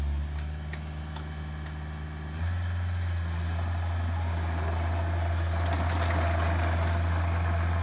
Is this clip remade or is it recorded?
recorded